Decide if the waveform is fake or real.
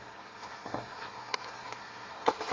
fake